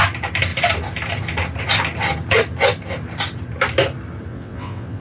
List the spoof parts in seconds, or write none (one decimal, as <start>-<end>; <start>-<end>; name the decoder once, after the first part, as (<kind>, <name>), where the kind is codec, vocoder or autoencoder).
4.3-5.0 (vocoder, WaveNeXt)